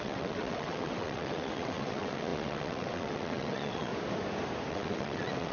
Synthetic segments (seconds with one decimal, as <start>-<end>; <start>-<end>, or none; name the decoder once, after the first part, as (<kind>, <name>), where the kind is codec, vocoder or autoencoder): 0.0-3.9 (vocoder, WaveNeXt); 4.7-5.5